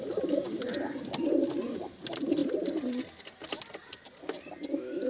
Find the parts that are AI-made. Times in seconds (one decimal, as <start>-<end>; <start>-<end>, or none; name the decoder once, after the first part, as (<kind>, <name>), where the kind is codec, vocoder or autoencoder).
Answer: none